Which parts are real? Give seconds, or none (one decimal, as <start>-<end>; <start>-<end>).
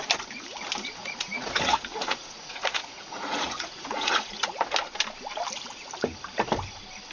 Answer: 0.0-1.0; 4.6-7.1